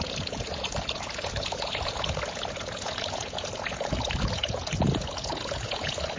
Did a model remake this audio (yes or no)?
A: yes